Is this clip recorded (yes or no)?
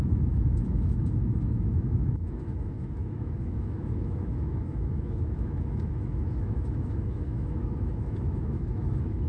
no